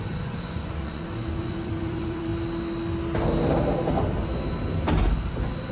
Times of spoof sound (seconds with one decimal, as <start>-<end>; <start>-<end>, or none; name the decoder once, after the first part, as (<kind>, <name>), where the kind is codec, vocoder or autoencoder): 0.0-2.3 (vocoder, Vocos)